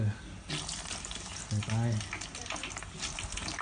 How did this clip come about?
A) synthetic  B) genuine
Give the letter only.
B